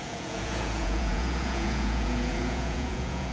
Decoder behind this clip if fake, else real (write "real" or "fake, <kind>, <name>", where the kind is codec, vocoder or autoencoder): fake, vocoder, Vocos